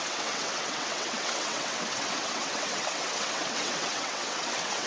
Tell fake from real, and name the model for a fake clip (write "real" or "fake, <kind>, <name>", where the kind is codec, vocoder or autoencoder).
fake, vocoder, WaveNeXt